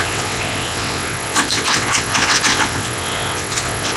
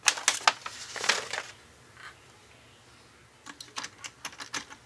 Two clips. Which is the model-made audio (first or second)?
first